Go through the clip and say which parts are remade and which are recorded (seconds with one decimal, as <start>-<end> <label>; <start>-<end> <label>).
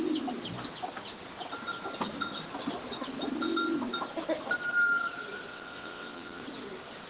0.0-5.5 recorded; 5.5-6.4 remade; 6.4-7.1 recorded